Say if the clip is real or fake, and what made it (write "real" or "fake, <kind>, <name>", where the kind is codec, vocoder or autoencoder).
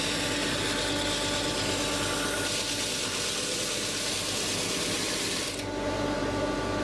real